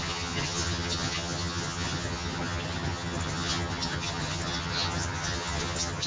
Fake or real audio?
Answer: fake